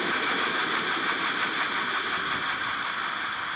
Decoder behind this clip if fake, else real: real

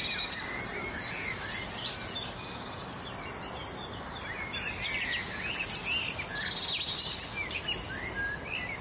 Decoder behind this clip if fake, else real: real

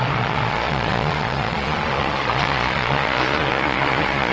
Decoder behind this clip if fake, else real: fake, vocoder, Vocos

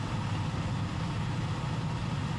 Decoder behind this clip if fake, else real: real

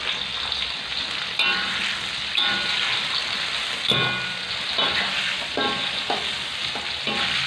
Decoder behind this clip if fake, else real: real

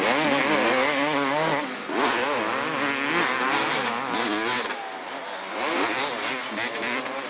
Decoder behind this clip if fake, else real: real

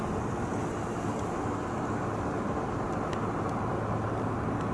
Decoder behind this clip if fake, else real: real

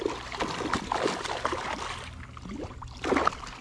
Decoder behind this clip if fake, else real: real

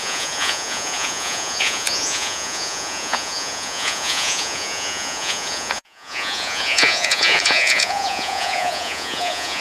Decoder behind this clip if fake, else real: fake, vocoder, Vocos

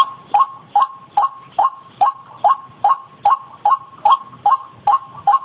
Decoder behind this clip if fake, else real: real